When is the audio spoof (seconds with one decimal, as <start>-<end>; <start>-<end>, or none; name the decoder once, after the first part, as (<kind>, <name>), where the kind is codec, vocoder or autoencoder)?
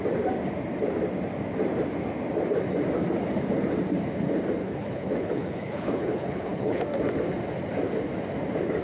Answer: 4.6-6.8 (codec, HILCodec)